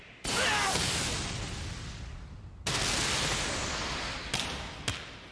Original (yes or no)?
yes